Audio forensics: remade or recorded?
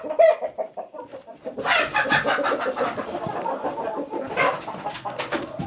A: remade